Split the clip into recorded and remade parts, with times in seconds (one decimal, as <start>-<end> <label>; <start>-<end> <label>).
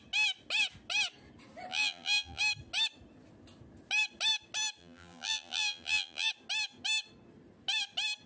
0.0-1.7 recorded; 1.7-2.4 remade; 2.4-4.8 recorded; 4.8-6.3 remade; 6.3-8.3 recorded